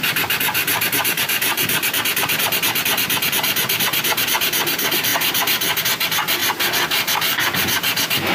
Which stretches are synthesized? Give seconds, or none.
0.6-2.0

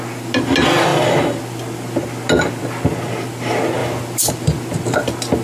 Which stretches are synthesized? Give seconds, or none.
none